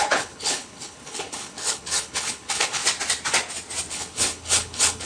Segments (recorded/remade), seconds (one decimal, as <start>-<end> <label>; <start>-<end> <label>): 0.0-2.8 remade; 2.8-3.9 recorded; 3.9-5.1 remade